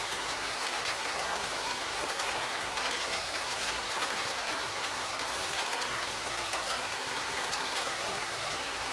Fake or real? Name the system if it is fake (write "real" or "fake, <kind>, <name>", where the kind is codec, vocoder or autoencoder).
fake, codec, SNAC